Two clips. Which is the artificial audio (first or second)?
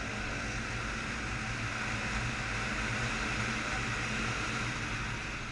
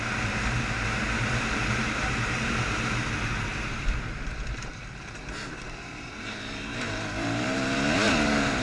second